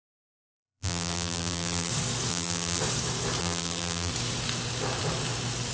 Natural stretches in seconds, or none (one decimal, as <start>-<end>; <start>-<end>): 1.9-2.3; 2.8-3.4; 4.1-5.7